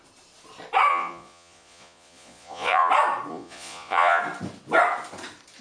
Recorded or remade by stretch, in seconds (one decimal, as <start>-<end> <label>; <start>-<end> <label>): 0.0-0.9 recorded; 0.9-2.9 remade; 2.9-3.3 recorded; 3.3-4.2 remade; 4.2-5.6 recorded